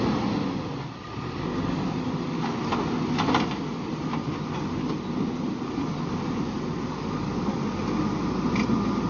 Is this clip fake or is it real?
real